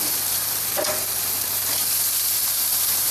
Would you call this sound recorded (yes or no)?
no